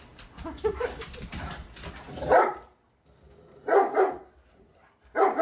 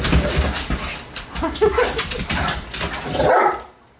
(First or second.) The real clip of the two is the second